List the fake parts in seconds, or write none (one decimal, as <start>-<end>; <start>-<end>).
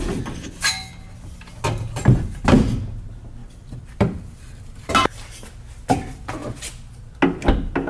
3.4-4.9